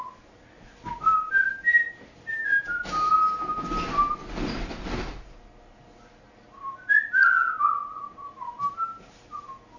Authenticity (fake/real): real